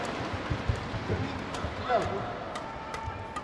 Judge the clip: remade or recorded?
recorded